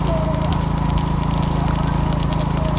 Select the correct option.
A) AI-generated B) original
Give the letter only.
B